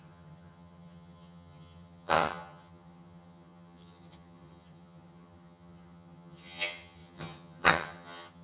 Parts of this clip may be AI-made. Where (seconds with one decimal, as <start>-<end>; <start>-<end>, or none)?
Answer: 0.0-8.4